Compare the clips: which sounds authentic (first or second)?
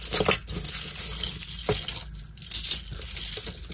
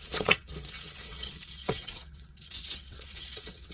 first